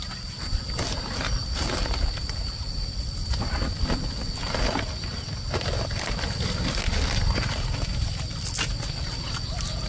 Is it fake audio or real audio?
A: real